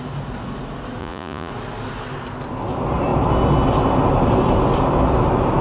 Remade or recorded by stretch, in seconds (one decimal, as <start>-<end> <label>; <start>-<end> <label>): 0.0-1.0 recorded; 1.0-1.5 remade; 1.5-5.6 recorded